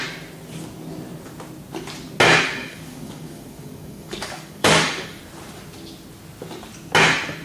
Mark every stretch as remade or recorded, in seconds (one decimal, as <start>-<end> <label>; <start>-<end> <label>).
0.0-2.6 recorded; 2.6-5.2 remade; 5.2-7.4 recorded